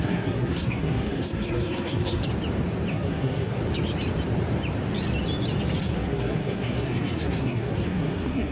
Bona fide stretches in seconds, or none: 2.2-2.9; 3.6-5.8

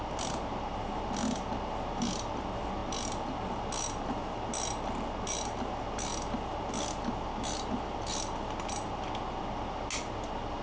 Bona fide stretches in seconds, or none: 0.0-10.6

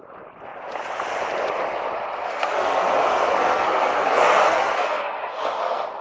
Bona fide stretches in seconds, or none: 0.0-2.2

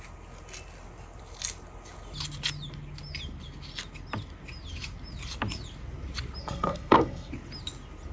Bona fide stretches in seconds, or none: 0.0-6.4; 7.3-8.1

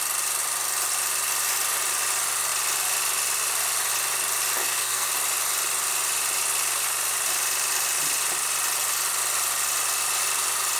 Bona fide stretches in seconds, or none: 0.0-4.6; 5.1-10.8

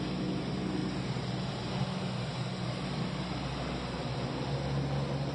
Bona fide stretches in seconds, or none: 0.0-5.3